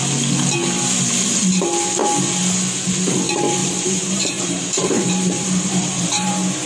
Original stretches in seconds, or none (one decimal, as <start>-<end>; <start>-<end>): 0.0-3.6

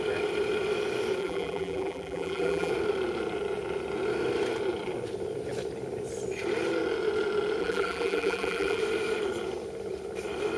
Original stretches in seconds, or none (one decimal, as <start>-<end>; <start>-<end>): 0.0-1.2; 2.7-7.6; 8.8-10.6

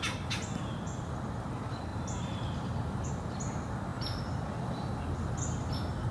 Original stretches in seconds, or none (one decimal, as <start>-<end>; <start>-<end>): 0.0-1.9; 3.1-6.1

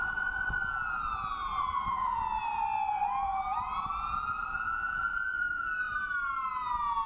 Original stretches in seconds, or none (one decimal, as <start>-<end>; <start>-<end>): 0.0-1.4; 2.9-7.1